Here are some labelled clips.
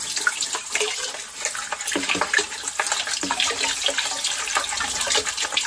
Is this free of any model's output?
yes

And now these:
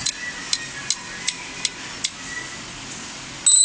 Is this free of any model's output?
yes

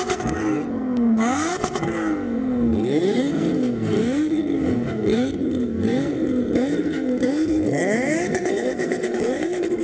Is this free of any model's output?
no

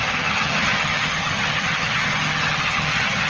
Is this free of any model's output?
no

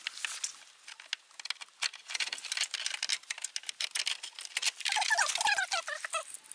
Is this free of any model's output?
yes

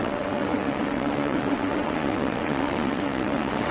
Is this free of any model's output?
no